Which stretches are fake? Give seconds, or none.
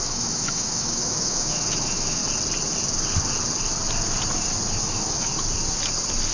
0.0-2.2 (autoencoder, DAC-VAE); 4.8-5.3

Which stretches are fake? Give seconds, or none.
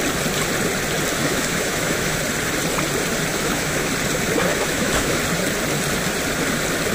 1.2-2.2 (autoencoder, DAC-VAE); 3.3-3.9; 4.5-5.2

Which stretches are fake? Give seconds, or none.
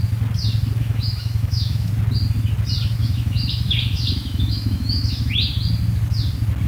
0.8-1.9 (autoencoder, DAC-VAE); 3.0-5.5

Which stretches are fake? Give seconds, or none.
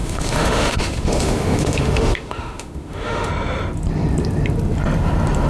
0.0-3.3 (autoencoder, DAC-VAE)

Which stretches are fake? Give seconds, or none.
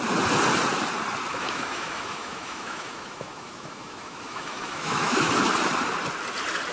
1.3-5.3 (autoencoder, DAC-VAE)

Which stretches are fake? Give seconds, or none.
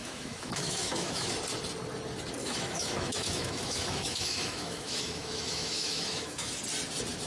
0.0-1.3 (autoencoder, DAC-VAE); 2.4-6.6